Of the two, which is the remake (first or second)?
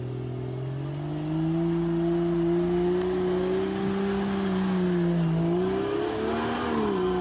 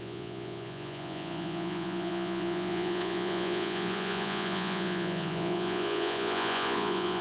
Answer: second